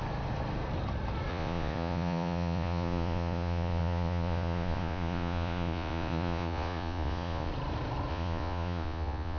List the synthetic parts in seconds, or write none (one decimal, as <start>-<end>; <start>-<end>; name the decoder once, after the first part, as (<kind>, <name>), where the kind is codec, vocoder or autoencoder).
1.3-7.5 (vocoder, Vocos); 8.1-9.4